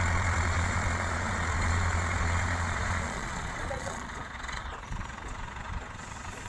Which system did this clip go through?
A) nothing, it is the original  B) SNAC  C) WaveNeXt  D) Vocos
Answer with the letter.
D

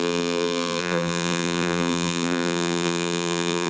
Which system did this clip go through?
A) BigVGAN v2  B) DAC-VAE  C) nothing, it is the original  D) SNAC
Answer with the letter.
A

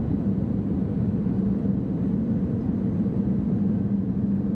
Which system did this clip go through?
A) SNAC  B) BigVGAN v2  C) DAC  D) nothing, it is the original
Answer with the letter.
B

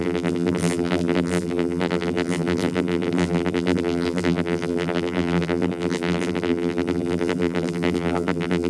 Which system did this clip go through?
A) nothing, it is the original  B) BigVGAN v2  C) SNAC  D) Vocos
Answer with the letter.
B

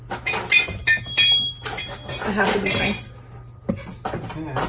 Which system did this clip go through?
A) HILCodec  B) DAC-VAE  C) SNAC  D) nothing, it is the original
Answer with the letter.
D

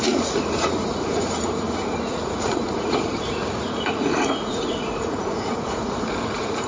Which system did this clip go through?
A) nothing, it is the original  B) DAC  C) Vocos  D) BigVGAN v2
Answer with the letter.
C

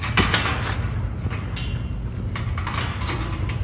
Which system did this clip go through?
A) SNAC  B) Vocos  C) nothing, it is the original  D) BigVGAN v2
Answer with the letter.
C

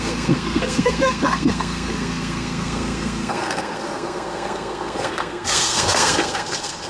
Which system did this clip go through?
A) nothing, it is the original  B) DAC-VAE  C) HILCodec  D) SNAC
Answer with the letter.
D